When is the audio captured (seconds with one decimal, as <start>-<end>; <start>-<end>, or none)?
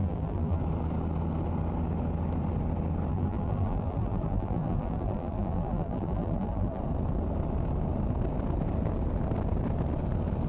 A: 0.6-3.1; 6.8-10.5